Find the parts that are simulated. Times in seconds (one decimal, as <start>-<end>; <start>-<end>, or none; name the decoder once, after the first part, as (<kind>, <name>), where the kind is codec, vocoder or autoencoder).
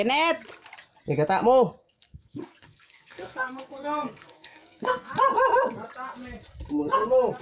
1.8-5.1 (codec, SNAC)